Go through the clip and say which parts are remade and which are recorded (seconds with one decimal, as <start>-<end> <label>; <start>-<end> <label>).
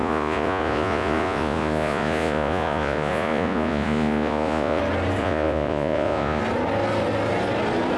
0.0-4.8 remade; 4.8-5.2 recorded; 5.2-6.4 remade; 6.4-8.0 recorded